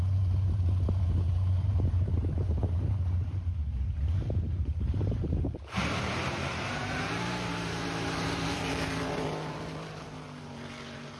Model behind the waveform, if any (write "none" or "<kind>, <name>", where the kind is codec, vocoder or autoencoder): vocoder, BigVGAN v2